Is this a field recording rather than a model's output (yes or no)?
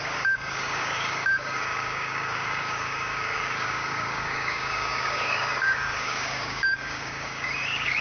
no